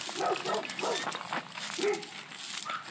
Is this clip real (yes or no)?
yes